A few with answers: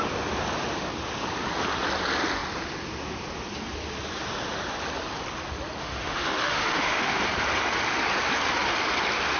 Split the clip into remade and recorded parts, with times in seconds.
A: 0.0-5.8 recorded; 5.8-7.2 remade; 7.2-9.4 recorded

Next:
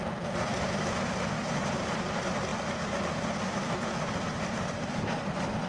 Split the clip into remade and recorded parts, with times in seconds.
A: 0.0-2.5 remade; 2.5-4.4 recorded; 4.4-5.7 remade

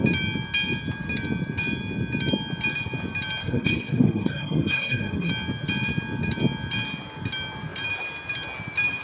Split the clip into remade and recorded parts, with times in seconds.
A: 0.0-3.4 recorded; 3.4-5.3 remade; 5.3-9.0 recorded

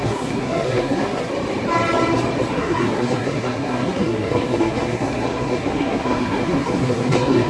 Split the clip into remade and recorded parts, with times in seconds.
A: 0.0-1.3 remade; 1.3-2.5 recorded; 2.5-7.5 remade

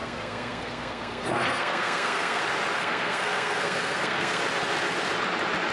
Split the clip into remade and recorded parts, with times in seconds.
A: 0.0-2.4 remade; 2.4-2.8 recorded; 2.8-4.4 remade; 4.4-5.7 recorded

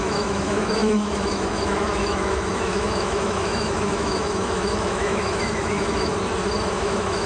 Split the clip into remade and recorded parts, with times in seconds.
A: 0.0-6.1 remade; 6.1-6.7 recorded; 6.7-7.3 remade

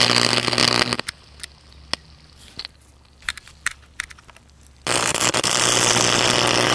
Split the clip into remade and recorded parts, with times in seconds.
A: 0.0-6.7 recorded

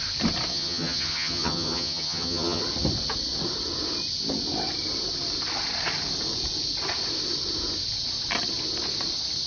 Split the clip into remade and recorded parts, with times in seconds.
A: 0.0-0.5 recorded; 0.5-2.6 remade; 2.6-9.5 recorded